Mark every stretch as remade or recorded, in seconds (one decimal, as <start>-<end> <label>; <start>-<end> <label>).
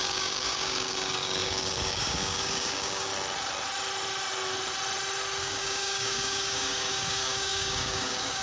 0.0-3.1 remade; 3.1-5.4 recorded; 5.4-8.4 remade